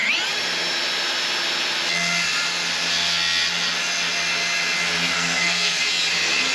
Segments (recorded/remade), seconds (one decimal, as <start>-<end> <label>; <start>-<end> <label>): 0.0-5.1 recorded; 5.1-5.8 remade; 5.8-6.5 recorded